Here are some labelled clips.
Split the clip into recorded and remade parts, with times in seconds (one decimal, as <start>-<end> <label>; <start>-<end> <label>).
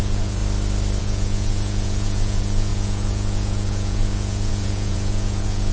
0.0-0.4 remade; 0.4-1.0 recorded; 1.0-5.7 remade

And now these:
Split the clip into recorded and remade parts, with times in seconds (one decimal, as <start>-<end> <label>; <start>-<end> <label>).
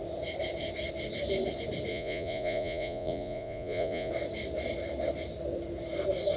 0.0-1.9 recorded; 1.9-4.1 remade; 4.1-6.4 recorded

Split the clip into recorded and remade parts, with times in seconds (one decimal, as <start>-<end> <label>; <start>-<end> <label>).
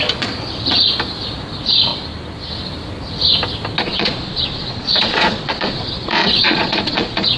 0.0-3.8 recorded; 3.8-7.4 remade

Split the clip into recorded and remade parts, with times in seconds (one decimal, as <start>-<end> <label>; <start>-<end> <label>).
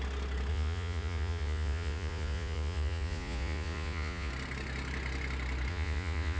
0.0-0.5 recorded; 0.5-4.3 remade; 4.3-5.7 recorded; 5.7-6.4 remade